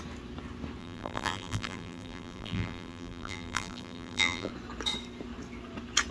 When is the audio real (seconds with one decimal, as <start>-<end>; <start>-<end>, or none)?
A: 0.0-0.8; 4.5-6.1